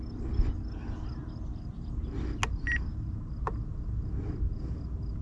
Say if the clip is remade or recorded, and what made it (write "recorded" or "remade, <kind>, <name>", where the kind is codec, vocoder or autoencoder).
recorded